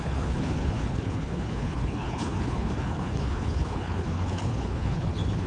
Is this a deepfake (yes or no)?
yes